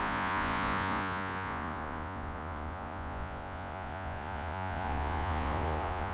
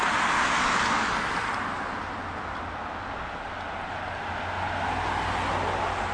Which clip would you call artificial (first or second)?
first